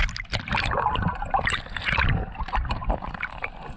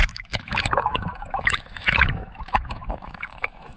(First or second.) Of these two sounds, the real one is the first